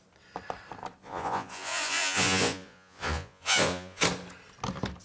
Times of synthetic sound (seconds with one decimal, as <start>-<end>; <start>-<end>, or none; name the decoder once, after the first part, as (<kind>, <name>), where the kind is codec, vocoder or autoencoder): 1.0-4.0 (vocoder, Vocos)